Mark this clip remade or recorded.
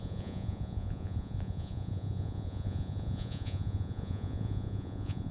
remade